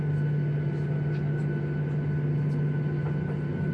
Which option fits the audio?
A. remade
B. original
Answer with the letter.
B